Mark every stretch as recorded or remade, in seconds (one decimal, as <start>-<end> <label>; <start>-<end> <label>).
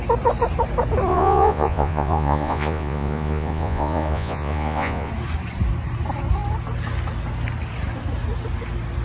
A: 0.0-1.1 recorded; 1.1-5.1 remade; 5.1-9.0 recorded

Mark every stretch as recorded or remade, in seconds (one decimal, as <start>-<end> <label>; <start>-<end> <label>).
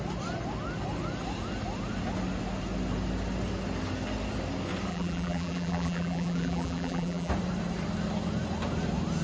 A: 0.0-4.9 recorded; 4.9-7.3 remade; 7.3-9.2 recorded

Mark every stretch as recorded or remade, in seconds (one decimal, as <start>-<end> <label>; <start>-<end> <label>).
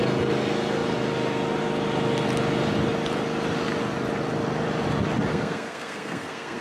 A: 0.0-5.3 recorded; 5.3-6.6 remade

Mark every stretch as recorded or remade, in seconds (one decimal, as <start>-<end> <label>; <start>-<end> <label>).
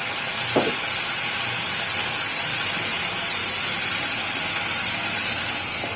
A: 0.0-2.5 recorded; 2.5-3.0 remade; 3.0-3.4 recorded; 3.4-4.0 remade; 4.0-6.0 recorded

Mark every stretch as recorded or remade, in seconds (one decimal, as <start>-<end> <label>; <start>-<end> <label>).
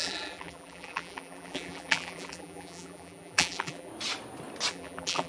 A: 0.0-3.9 remade; 3.9-4.7 recorded; 4.7-5.3 remade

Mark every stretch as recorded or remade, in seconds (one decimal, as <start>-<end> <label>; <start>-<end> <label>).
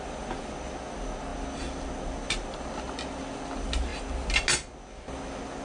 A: 0.0-5.6 recorded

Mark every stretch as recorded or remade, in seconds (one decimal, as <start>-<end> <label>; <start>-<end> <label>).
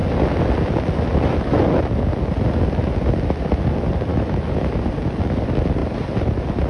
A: 0.0-4.1 recorded; 4.1-4.8 remade; 4.8-6.7 recorded